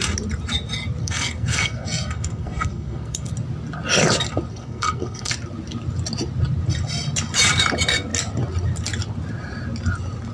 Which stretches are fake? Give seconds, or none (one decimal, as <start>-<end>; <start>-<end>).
1.0-3.3; 4.5-5.3